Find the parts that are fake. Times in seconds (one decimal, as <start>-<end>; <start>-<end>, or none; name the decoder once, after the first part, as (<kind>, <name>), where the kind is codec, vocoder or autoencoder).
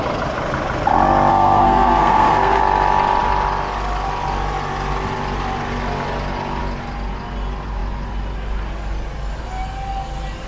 1.3-2.6 (codec, SNAC)